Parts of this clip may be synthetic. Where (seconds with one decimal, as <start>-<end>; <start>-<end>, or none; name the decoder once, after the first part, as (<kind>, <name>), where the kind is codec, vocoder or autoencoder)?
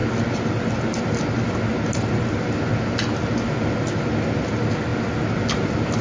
none